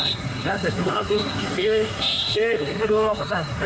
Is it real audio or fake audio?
fake